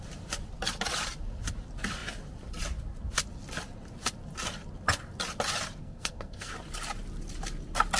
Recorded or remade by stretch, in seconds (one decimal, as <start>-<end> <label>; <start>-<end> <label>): 0.0-5.8 recorded; 5.8-6.5 remade; 6.5-8.0 recorded